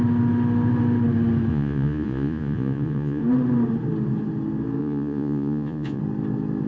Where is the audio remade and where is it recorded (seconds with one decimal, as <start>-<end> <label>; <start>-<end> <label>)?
0.0-1.5 recorded; 1.5-3.2 remade; 3.2-4.8 recorded; 4.8-6.0 remade; 6.0-6.7 recorded